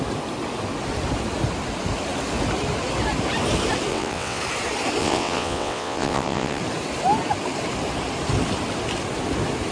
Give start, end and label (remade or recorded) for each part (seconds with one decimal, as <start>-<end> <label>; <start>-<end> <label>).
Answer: 0.0-3.9 recorded; 3.9-4.4 remade; 4.4-5.0 recorded; 5.0-6.6 remade; 6.6-9.7 recorded